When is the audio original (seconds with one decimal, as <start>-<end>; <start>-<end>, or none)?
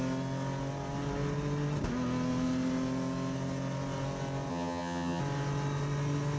0.0-4.5; 5.2-6.4